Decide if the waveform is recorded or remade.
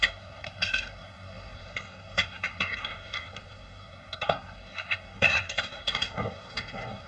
remade